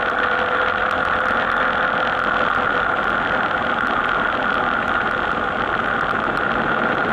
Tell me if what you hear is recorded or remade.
recorded